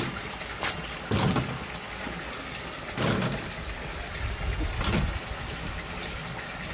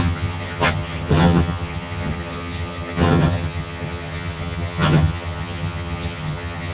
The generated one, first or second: second